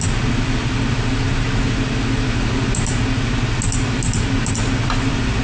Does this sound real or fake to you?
real